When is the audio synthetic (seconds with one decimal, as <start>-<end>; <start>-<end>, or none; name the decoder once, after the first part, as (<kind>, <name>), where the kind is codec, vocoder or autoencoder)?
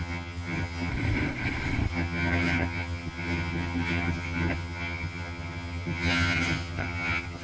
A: 0.0-0.9 (vocoder, HiFi-GAN); 1.9-7.4